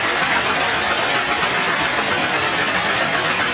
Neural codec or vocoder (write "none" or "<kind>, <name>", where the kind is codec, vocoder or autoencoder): none